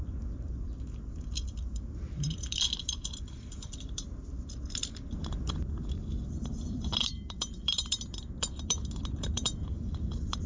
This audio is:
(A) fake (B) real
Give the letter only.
A